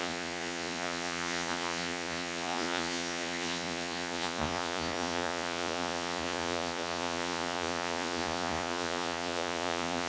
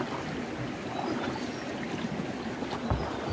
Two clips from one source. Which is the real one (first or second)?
second